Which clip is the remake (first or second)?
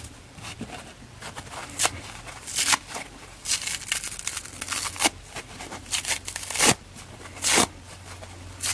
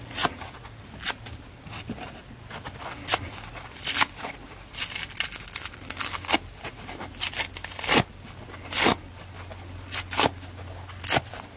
first